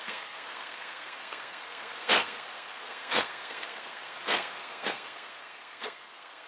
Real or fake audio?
fake